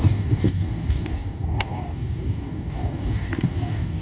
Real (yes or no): no